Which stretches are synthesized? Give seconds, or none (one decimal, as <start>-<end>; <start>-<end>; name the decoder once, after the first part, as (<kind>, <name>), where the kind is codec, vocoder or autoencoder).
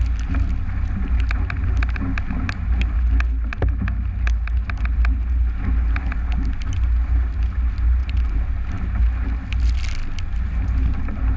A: none